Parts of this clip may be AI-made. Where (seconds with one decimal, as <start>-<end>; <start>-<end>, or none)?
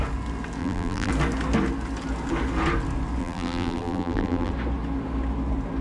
0.6-1.1; 3.2-4.5